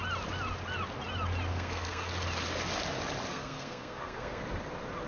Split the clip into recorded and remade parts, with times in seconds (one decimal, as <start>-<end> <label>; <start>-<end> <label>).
0.0-1.5 recorded; 1.5-2.1 remade; 2.1-3.3 recorded; 3.3-4.4 remade; 4.4-5.1 recorded